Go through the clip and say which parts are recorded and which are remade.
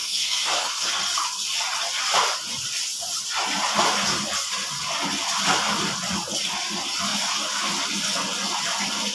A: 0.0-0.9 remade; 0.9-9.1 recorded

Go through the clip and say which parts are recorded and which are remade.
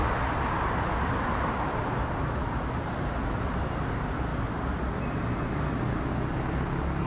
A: 0.0-7.1 recorded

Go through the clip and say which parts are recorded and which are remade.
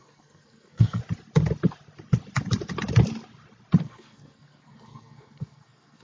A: 0.0-1.0 remade; 1.0-3.8 recorded; 3.8-6.0 remade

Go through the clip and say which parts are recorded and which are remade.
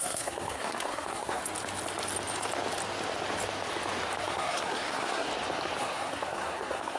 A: 0.0-1.4 remade; 1.4-4.2 recorded; 4.2-5.3 remade; 5.3-5.8 recorded; 5.8-7.0 remade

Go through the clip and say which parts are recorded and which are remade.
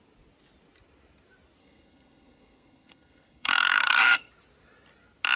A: 0.0-1.6 recorded; 1.6-4.3 remade; 4.3-5.4 recorded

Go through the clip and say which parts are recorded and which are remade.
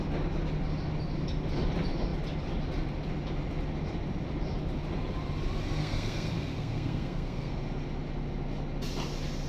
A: 0.0-5.8 recorded; 5.8-7.5 remade; 7.5-9.5 recorded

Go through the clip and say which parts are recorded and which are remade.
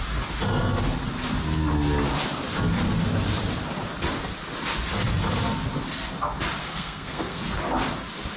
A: 0.0-6.6 recorded; 6.6-7.4 remade; 7.4-8.4 recorded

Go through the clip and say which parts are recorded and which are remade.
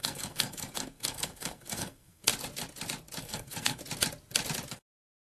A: 0.0-2.3 remade; 2.3-3.2 recorded; 3.2-3.8 remade; 3.8-4.7 recorded; 4.7-5.3 remade